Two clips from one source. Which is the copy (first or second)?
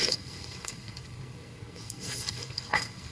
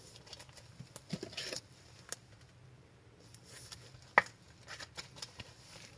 first